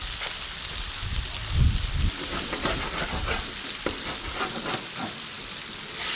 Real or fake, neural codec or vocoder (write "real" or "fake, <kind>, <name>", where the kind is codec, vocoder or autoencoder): real